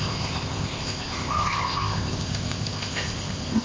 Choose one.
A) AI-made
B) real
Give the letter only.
A